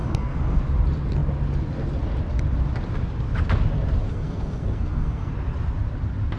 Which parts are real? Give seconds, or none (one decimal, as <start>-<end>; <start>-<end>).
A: 0.6-4.1; 5.3-6.4